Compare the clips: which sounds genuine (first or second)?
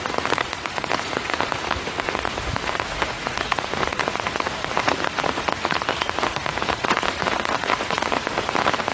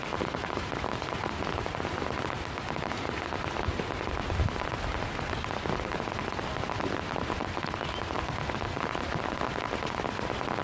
second